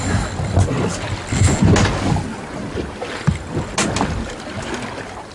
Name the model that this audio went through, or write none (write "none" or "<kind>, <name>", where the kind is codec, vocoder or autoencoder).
none